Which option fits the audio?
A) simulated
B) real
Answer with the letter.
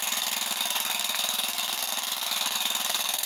A